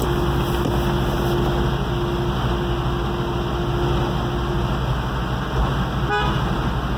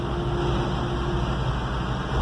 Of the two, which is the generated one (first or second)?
second